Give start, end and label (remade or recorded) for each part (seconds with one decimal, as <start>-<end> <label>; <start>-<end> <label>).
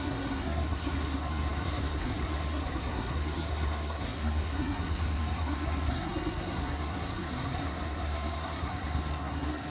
0.0-9.7 remade